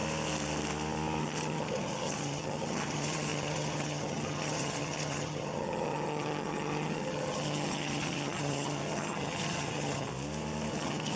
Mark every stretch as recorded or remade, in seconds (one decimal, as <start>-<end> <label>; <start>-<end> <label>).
0.0-1.2 recorded; 1.2-10.1 remade; 10.1-10.7 recorded; 10.7-11.2 remade